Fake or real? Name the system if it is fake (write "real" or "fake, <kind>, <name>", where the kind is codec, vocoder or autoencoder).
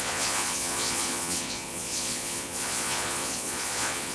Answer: fake, vocoder, Vocos